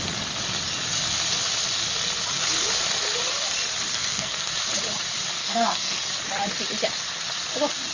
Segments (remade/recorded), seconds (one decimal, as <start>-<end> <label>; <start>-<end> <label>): 0.0-3.9 recorded; 3.9-4.5 remade; 4.5-5.4 recorded; 5.4-6.0 remade; 6.0-7.9 recorded